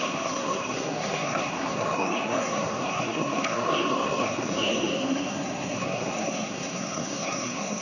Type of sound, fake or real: fake